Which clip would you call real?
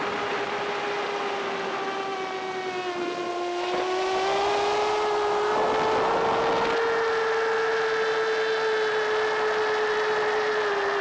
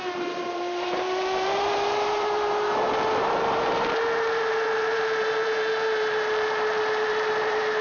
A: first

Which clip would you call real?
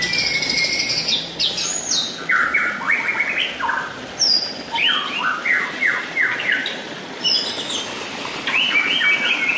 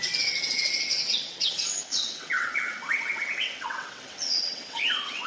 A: first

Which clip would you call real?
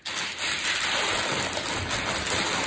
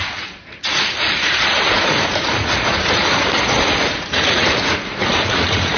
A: first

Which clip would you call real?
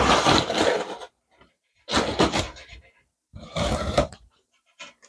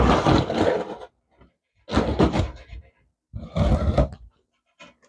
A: second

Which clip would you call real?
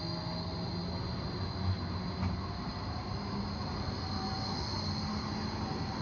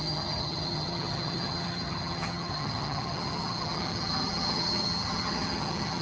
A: first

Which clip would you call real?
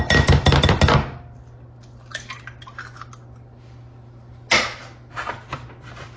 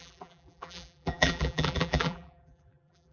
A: first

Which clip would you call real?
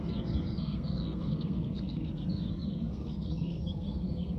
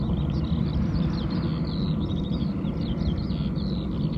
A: second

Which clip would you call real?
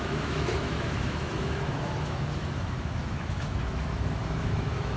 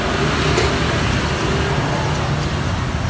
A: second